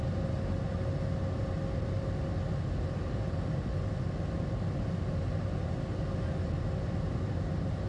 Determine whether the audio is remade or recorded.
recorded